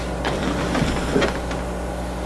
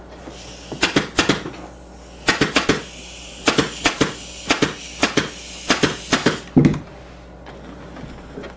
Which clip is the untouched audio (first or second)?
second